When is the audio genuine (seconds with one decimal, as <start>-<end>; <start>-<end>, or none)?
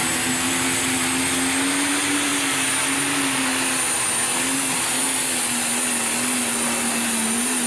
0.0-7.7